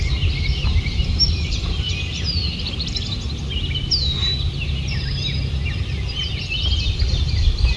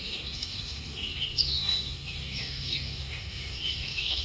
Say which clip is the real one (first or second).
first